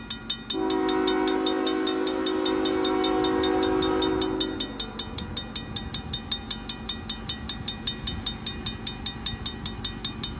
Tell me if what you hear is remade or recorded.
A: recorded